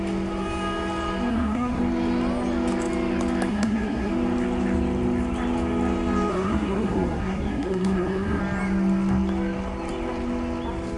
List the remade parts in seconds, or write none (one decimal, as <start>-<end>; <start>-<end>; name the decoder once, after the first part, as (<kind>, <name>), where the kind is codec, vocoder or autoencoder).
1.3-1.8 (codec, SNAC); 3.5-4.1; 6.3-8.4